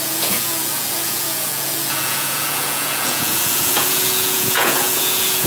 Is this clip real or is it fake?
fake